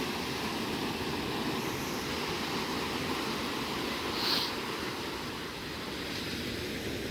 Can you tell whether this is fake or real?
real